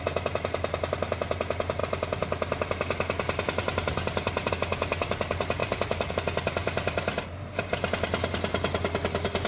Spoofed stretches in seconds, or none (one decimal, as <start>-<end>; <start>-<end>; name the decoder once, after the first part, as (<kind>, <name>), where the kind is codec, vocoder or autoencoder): 5.6-6.1 (vocoder, BigVGAN v2); 6.6-7.9

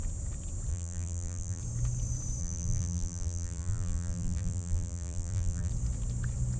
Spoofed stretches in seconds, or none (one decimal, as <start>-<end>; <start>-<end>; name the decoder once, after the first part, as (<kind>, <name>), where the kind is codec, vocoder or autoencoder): 0.7-1.6 (vocoder, BigVGAN v2); 2.4-5.7

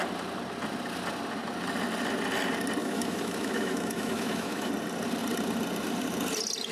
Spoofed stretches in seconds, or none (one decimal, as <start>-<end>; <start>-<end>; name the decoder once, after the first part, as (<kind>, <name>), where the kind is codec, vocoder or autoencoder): 2.8-4.7 (autoencoder, DAC-VAE)

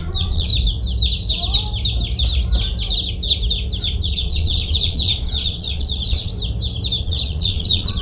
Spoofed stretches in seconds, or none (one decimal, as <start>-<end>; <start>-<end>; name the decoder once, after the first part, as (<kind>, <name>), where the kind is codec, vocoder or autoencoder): 0.0-0.5 (vocoder, Vocos); 4.0-6.3; 7.0-8.0